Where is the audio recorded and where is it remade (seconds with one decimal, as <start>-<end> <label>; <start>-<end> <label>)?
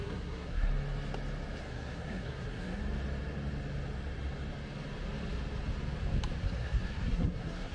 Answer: 0.0-0.7 remade; 0.7-1.6 recorded; 1.6-2.8 remade; 2.8-6.4 recorded; 6.4-7.7 remade